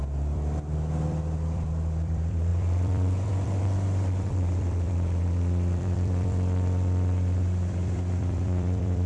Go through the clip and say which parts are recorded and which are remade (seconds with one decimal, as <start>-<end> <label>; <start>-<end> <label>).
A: 0.0-9.1 remade